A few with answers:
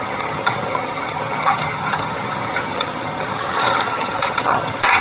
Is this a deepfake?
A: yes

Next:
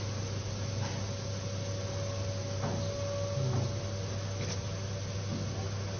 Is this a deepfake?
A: no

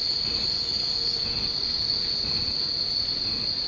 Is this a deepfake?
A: no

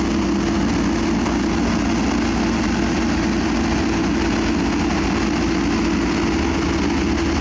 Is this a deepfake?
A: no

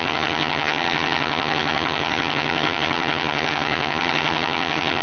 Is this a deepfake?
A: yes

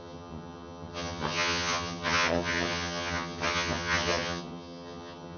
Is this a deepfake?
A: yes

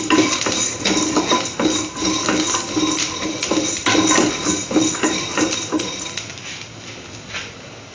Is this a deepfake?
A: no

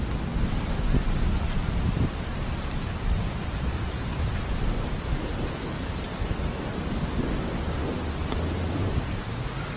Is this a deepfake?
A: no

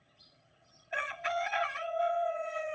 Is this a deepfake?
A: yes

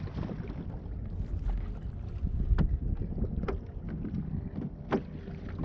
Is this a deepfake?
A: no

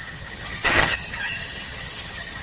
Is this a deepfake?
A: yes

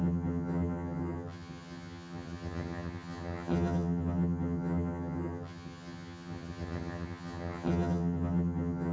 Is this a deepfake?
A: yes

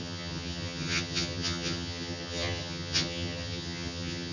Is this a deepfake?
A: yes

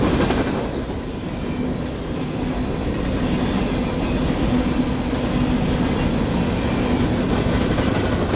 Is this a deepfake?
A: no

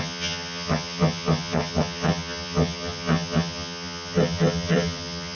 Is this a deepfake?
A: yes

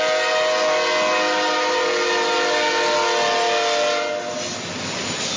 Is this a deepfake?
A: no